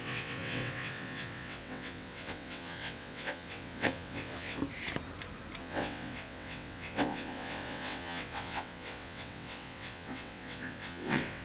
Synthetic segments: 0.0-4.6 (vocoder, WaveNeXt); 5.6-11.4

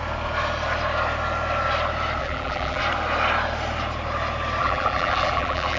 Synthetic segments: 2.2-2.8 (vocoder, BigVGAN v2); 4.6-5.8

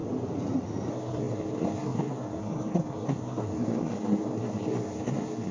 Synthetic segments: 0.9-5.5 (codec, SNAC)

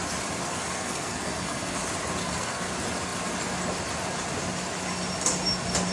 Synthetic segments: 0.5-1.8 (codec, SNAC); 2.2-2.7

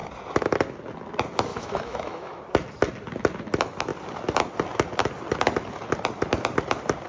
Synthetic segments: 1.5-2.4 (autoencoder, DAC-VAE)

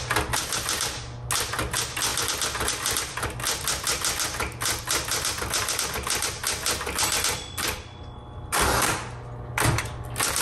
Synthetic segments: none

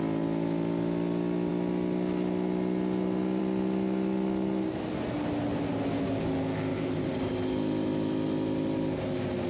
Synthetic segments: 6.7-7.3 (vocoder, BigVGAN v2)

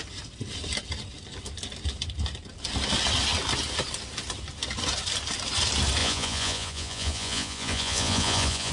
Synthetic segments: 6.0-8.7 (vocoder, Vocos)